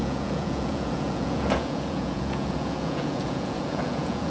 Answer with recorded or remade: remade